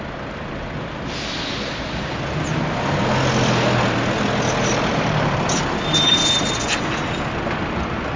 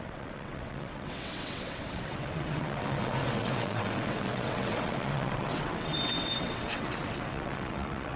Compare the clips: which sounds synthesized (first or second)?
second